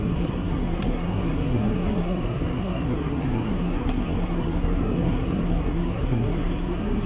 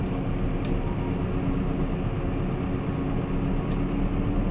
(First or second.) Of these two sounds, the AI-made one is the first